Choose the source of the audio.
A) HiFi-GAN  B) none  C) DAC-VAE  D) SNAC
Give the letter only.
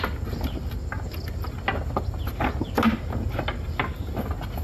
B